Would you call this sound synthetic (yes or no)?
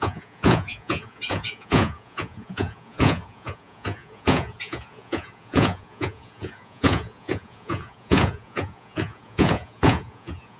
yes